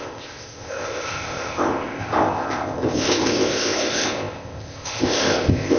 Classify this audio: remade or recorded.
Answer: remade